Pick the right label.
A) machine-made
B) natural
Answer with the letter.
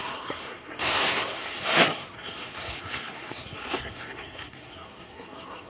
A